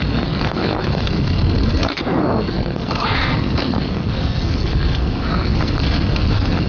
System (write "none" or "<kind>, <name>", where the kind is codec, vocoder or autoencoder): codec, SNAC